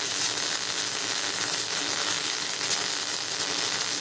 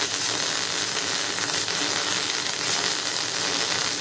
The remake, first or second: second